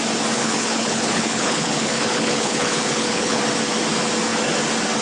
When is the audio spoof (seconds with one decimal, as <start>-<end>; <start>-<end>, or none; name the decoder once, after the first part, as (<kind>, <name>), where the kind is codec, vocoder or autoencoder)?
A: 0.4-3.4 (codec, HILCodec)